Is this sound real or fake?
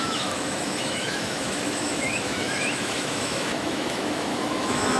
fake